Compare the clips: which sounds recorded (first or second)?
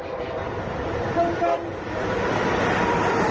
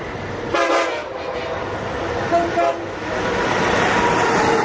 second